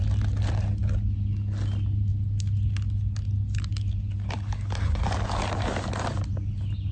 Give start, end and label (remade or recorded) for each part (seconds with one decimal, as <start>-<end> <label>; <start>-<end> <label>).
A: 0.0-6.9 recorded